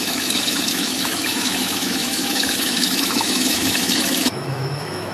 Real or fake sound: fake